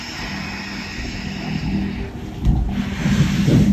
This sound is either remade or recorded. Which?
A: recorded